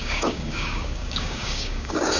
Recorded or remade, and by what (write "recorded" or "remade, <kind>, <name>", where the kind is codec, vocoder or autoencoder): remade, codec, DAC